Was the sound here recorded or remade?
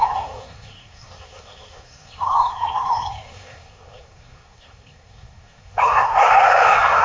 remade